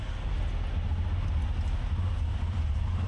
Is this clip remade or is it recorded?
recorded